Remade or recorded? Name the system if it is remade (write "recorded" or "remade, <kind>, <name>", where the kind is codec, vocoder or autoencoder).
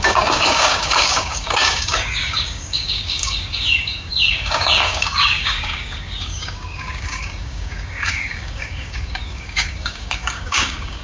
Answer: remade, codec, DAC